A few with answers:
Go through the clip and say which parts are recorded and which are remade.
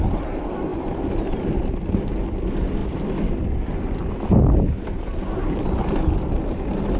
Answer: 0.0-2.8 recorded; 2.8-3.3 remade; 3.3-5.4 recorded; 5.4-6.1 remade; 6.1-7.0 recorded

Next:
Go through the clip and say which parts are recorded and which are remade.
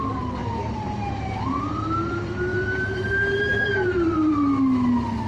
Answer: 0.0-0.4 recorded; 0.4-1.7 remade; 1.7-2.5 recorded; 2.5-4.3 remade; 4.3-5.3 recorded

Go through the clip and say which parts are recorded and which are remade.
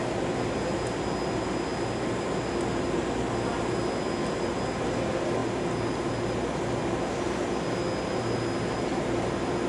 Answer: 0.0-9.7 recorded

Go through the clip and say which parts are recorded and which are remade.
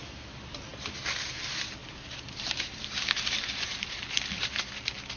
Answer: 0.0-1.8 recorded; 1.8-4.1 remade; 4.1-5.2 recorded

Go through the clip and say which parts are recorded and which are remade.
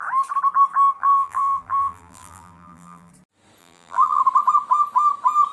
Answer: 0.0-1.0 recorded; 1.0-3.1 remade; 3.1-3.6 recorded; 3.6-4.2 remade; 4.2-5.5 recorded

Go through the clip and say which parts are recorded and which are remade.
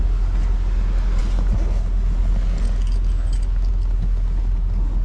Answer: 0.0-5.0 recorded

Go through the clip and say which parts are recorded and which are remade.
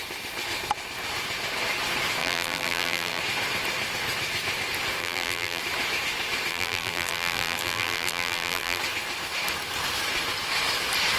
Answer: 0.0-2.2 recorded; 2.2-3.2 remade; 3.2-5.0 recorded; 5.0-5.6 remade; 5.6-6.5 recorded; 6.5-8.8 remade; 8.8-11.2 recorded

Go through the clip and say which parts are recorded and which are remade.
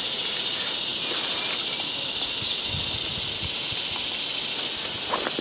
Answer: 0.0-5.4 recorded